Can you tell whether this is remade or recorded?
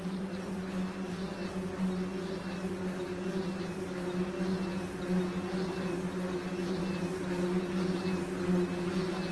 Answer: recorded